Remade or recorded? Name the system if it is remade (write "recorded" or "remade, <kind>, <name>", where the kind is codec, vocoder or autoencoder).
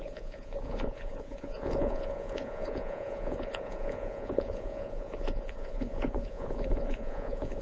remade, vocoder, Vocos